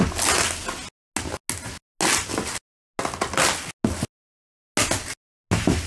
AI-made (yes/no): no